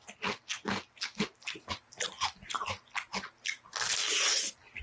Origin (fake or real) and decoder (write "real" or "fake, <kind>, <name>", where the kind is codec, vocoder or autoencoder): real